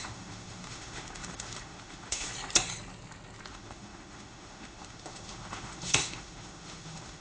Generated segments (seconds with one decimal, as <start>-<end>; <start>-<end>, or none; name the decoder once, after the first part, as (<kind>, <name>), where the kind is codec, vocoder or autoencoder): 0.0-2.3 (autoencoder, DAC-VAE); 3.5-7.2